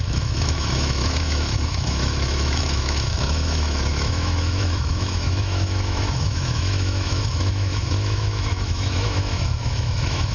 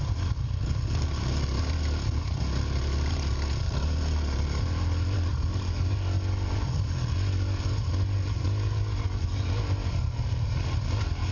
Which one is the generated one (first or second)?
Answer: first